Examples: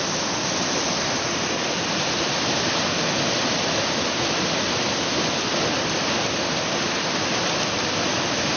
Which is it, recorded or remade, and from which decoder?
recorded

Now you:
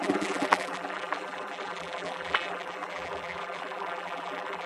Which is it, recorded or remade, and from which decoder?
remade, vocoder, BigVGAN v2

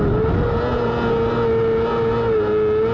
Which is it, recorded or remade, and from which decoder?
recorded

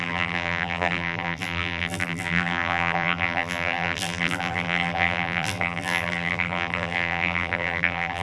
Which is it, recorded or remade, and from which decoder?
remade, vocoder, BigVGAN v2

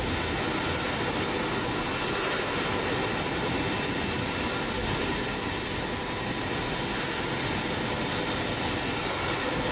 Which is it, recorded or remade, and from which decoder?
recorded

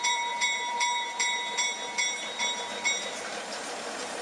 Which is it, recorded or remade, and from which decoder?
remade, vocoder, BigVGAN v2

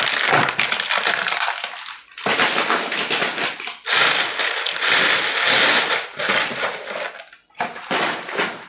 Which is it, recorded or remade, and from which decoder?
recorded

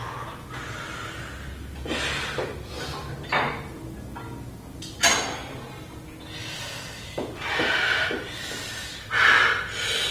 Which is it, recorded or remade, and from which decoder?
recorded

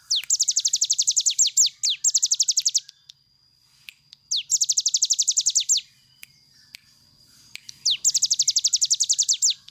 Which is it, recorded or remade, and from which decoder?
recorded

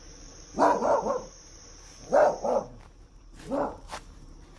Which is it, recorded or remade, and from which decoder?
remade, vocoder, BigVGAN v2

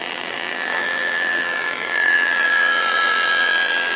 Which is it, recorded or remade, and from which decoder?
remade, vocoder, BigVGAN v2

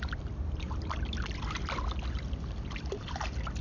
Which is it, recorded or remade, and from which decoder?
remade, vocoder, BigVGAN v2